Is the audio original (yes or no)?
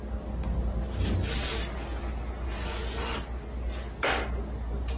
yes